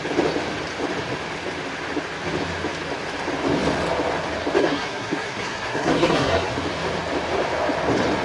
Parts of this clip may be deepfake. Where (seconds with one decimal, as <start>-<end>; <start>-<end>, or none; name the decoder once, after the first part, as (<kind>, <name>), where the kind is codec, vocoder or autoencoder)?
4.6-6.5 (codec, SNAC)